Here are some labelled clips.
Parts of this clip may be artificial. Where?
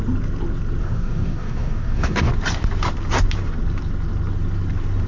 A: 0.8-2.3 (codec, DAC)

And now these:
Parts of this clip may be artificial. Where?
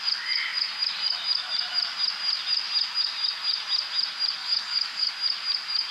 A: 4.4-5.1 (codec, DAC)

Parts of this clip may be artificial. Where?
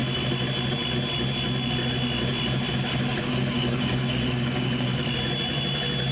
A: 3.2-4.9 (codec, DAC)